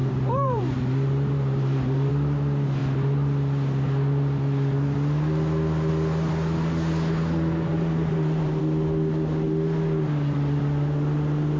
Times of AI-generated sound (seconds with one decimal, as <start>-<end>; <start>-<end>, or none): 0.0-2.1; 7.7-8.6